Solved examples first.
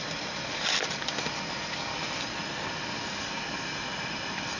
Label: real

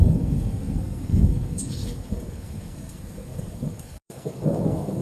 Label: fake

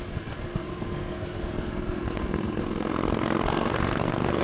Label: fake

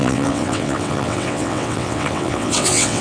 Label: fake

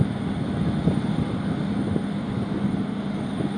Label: real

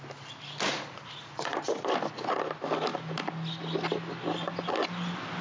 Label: real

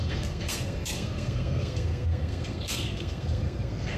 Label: fake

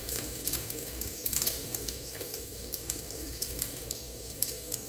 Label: fake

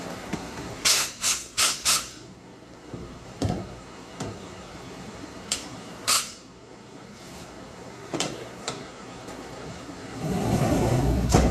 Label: fake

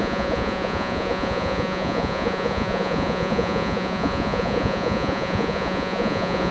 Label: fake